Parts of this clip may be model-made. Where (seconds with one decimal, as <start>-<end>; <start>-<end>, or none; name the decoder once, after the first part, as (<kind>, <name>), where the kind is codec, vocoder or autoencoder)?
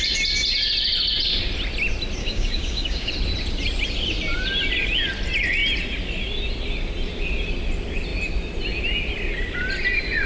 2.2-3.1 (codec, DAC)